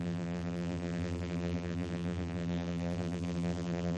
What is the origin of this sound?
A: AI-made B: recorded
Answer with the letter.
A